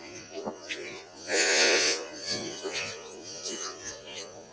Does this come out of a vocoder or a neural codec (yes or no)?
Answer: yes